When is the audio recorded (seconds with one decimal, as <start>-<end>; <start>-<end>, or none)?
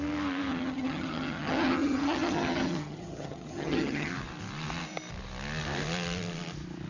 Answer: 0.0-0.5; 4.1-6.9